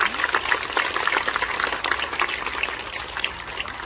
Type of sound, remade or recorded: recorded